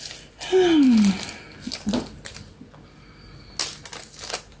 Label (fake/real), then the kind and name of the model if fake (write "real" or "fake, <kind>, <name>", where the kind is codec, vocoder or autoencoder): real